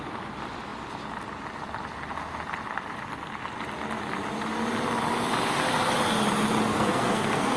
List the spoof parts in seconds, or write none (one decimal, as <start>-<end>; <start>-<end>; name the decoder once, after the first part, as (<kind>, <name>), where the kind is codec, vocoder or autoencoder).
6.7-7.6 (codec, SNAC)